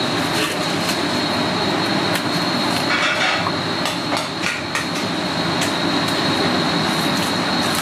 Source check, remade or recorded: recorded